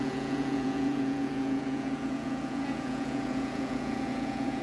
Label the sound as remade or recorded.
remade